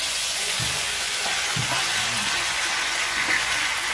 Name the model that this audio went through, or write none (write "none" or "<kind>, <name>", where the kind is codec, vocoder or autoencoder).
vocoder, Vocos